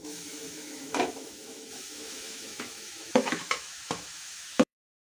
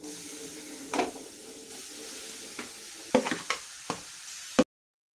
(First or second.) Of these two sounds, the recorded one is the second